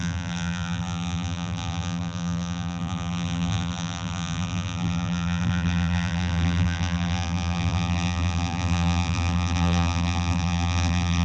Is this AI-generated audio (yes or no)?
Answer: yes